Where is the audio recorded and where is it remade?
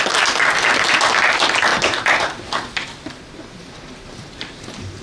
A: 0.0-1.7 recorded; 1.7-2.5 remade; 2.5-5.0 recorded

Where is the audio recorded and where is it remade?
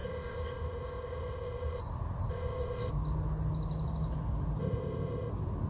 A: 0.0-1.8 remade; 1.8-2.3 recorded; 2.3-2.9 remade; 2.9-4.6 recorded; 4.6-5.3 remade; 5.3-5.7 recorded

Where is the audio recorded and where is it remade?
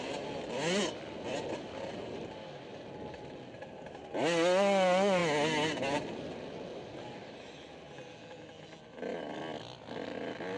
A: 0.0-10.6 recorded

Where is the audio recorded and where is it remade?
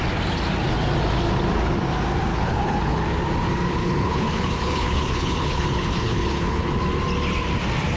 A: 0.0-2.3 recorded; 2.3-3.0 remade; 3.0-3.8 recorded; 3.8-6.7 remade; 6.7-8.0 recorded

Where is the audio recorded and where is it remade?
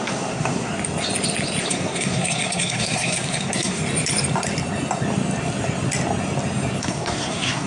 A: 0.0-0.7 remade; 0.7-1.6 recorded; 1.6-3.8 remade; 3.8-6.8 recorded; 6.8-7.7 remade